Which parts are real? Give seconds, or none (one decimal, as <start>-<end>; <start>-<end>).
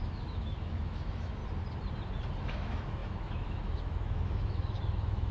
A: 1.4-2.4